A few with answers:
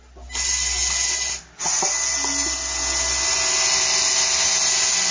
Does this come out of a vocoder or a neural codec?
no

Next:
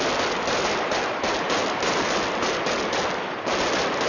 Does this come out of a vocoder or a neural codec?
no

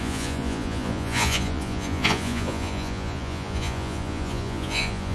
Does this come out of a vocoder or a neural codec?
yes